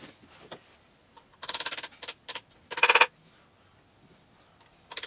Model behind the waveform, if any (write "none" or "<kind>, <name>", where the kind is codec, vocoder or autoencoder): none